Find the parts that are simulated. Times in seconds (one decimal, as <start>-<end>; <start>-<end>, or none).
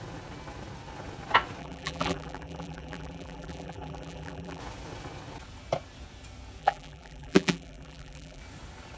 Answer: 1.6-4.6; 6.6-8.4